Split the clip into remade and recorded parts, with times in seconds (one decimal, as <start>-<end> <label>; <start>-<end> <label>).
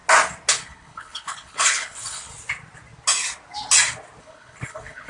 0.0-0.5 recorded; 0.5-2.3 remade; 2.3-4.2 recorded; 4.2-5.1 remade